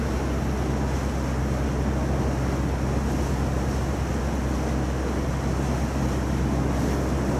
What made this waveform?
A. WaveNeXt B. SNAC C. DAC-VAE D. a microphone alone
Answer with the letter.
D